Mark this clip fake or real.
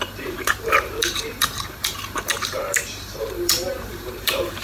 fake